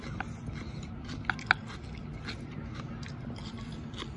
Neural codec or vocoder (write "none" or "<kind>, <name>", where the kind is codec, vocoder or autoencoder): none